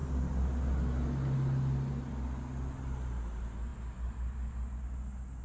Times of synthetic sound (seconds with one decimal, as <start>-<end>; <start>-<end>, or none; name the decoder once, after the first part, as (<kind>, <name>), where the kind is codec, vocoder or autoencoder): none